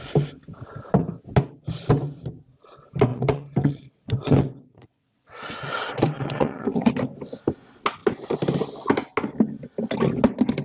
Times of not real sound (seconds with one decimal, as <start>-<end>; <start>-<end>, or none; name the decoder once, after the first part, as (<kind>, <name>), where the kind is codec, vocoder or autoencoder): 3.1-6.9 (vocoder, WaveNeXt)

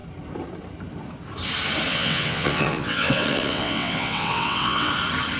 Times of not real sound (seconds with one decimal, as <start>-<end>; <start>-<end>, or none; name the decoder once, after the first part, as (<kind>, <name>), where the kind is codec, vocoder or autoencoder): 1.9-4.9 (vocoder, WaveNeXt)

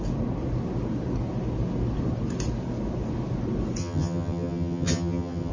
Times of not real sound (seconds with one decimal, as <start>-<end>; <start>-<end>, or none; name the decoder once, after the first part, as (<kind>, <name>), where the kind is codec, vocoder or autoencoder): 3.8-5.5 (vocoder, HiFi-GAN)

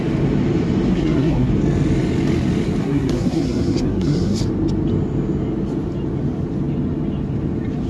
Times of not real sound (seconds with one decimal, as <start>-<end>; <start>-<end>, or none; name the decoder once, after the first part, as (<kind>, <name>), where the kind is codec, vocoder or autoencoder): 0.9-1.5 (codec, SNAC); 2.8-4.4

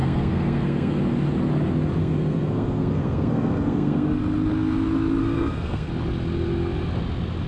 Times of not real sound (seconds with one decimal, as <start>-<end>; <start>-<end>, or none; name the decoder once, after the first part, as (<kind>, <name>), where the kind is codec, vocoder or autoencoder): 0.0-1.0 (codec, SNAC); 2.0-4.2; 5.2-5.9